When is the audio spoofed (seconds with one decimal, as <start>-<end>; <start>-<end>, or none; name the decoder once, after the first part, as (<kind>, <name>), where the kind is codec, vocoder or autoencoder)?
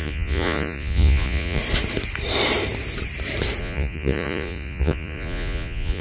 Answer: 0.0-1.6 (vocoder, Vocos); 3.6-6.0